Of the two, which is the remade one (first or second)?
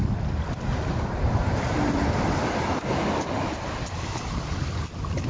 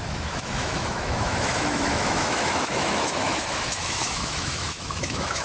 second